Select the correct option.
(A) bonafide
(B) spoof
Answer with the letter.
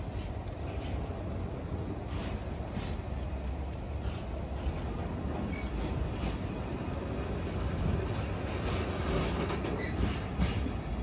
A